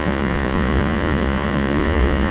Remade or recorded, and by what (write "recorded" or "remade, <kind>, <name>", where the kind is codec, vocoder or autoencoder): remade, vocoder, Vocos